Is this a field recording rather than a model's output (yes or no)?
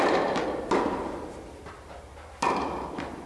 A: yes